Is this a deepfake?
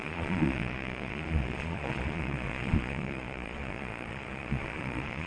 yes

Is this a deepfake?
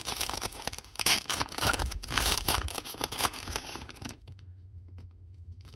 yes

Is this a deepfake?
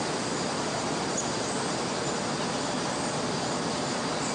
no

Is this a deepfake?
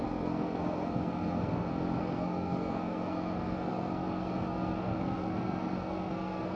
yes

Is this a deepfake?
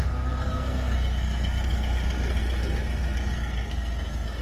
yes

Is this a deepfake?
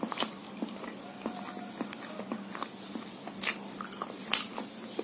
no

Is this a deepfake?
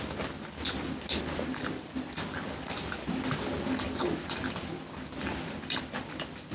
no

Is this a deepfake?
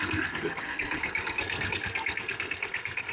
yes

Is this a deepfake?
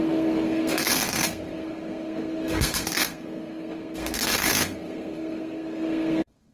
yes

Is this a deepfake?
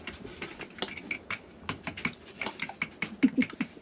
no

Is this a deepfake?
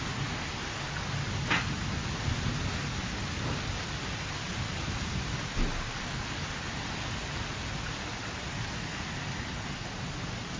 no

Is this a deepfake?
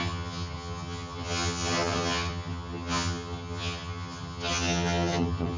yes